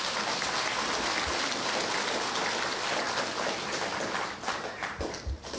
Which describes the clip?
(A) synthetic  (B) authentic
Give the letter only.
B